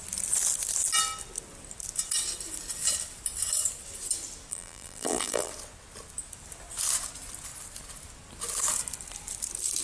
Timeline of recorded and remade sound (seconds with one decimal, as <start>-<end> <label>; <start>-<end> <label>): 0.0-4.5 recorded; 4.5-5.5 remade; 5.5-9.8 recorded